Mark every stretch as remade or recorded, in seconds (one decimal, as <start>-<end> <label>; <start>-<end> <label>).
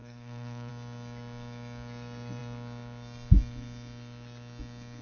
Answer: 0.0-0.7 remade; 0.7-5.0 recorded